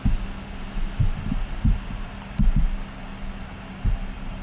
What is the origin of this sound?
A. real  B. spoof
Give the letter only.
A